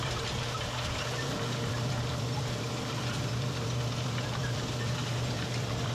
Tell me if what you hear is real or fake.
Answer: fake